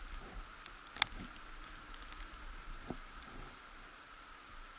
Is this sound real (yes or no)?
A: yes